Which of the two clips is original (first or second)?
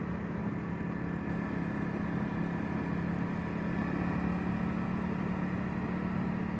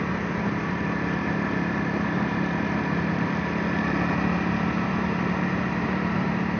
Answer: first